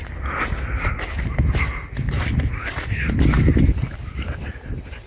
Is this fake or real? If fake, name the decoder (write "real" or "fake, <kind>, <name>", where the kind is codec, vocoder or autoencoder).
real